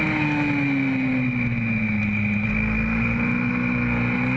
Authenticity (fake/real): real